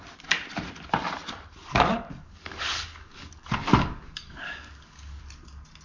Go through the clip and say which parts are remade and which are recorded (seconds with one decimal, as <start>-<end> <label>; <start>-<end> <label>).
0.0-1.7 recorded; 1.7-5.2 remade; 5.2-5.8 recorded